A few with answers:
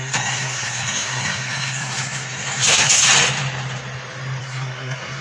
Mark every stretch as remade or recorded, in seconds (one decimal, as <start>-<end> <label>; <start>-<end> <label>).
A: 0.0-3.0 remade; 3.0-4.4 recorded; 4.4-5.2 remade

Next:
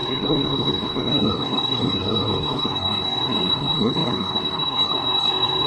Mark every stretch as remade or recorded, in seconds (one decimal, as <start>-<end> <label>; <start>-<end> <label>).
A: 0.0-5.7 remade

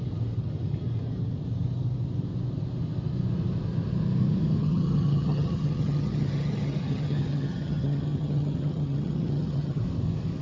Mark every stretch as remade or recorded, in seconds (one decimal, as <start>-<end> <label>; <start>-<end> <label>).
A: 0.0-4.6 recorded; 4.6-9.8 remade; 9.8-10.4 recorded